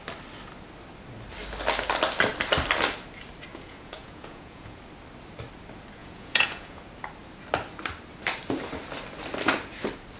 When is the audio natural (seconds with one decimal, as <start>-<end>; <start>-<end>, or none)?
0.0-3.5; 4.8-6.0; 6.8-10.2